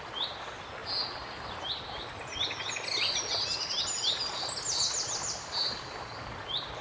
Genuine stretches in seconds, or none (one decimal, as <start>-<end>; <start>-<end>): 0.0-6.8